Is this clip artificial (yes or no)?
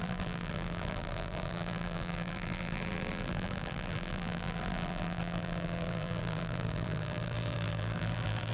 yes